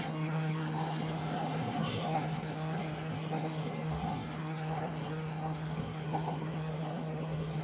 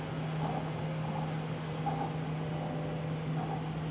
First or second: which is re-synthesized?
first